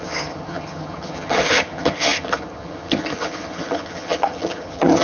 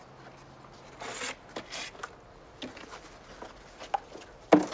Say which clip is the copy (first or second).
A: first